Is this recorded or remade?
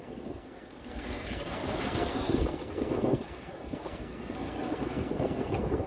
remade